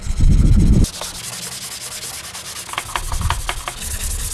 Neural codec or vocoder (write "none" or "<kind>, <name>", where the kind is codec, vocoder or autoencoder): none